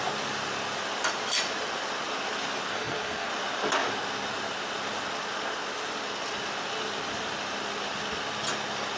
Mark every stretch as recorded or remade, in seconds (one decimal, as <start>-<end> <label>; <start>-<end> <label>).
0.0-2.7 recorded; 2.7-3.3 remade; 3.3-9.0 recorded